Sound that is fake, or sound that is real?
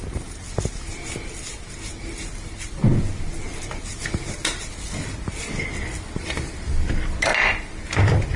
real